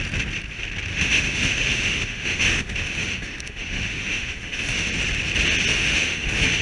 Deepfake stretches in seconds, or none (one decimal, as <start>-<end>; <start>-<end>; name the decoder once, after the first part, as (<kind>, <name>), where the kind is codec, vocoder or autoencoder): 0.9-4.9 (autoencoder, DAC-VAE); 5.7-6.6